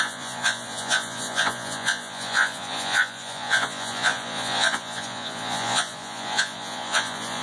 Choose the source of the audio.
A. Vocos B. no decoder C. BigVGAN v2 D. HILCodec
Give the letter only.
A